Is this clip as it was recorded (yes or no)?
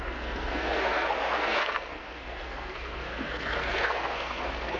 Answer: no